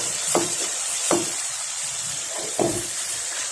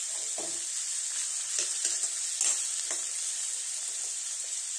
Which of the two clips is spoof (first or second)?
first